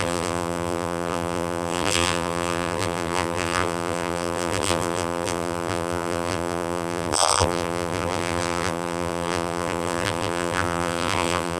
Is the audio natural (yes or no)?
no